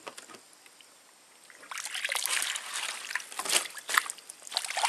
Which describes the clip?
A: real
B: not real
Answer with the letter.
A